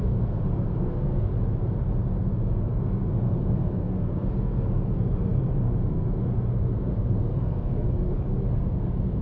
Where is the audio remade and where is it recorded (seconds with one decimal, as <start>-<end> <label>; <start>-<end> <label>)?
0.0-1.3 remade; 1.3-2.0 recorded; 2.0-9.2 remade